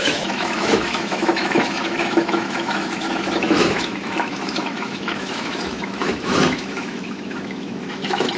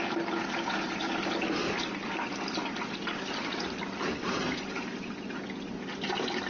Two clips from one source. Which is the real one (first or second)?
second